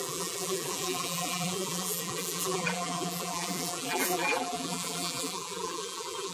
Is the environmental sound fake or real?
fake